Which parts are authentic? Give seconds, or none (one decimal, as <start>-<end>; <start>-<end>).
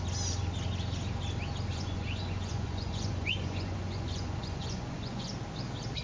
0.0-1.7; 5.3-6.0